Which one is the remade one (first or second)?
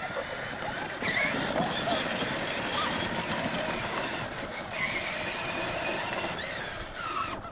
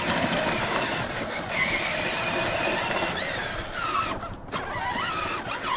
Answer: first